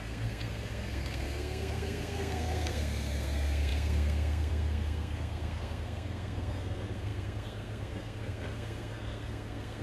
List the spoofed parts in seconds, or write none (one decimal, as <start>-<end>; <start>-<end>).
0.0-9.8